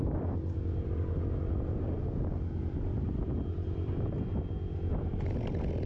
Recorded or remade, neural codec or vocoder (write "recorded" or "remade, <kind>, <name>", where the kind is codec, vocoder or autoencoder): recorded